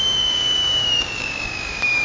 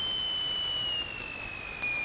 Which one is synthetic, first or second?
first